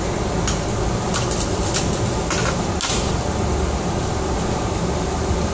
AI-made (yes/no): no